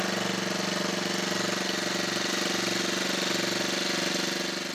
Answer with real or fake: real